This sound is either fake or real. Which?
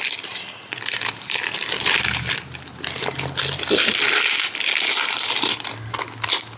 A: real